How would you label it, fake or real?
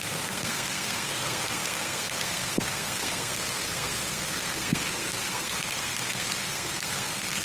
fake